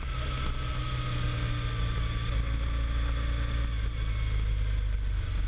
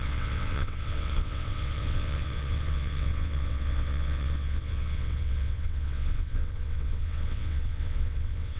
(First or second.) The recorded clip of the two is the first